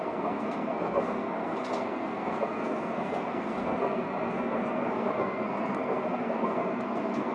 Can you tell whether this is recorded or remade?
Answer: remade